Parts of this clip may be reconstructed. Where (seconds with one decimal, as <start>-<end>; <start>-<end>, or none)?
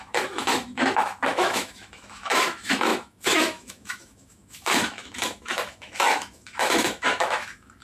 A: 0.0-7.8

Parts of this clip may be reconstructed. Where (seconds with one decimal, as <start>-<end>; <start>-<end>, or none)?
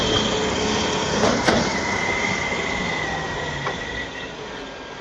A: 1.7-3.4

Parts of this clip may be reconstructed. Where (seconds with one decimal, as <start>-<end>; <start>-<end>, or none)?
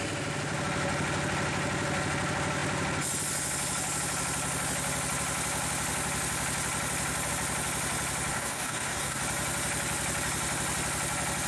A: 8.3-9.2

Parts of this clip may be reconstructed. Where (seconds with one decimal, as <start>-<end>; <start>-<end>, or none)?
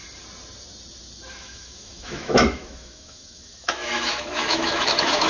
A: 1.3-5.3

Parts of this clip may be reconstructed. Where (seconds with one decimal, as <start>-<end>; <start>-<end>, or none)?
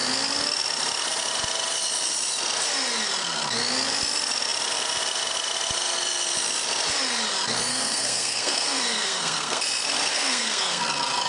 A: 7.7-9.6; 10.1-10.8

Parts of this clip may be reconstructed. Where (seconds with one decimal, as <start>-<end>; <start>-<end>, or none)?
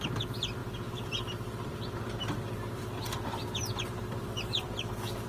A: 0.0-3.4; 4.0-5.3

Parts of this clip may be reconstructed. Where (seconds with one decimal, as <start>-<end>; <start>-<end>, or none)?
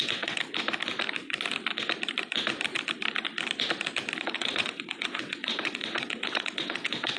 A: 0.0-0.4; 4.2-7.2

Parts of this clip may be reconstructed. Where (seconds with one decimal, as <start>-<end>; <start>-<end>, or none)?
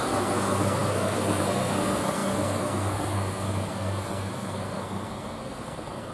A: 0.0-6.1